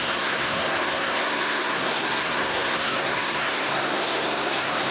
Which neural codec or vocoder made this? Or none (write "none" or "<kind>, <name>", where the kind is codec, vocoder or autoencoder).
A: codec, SNAC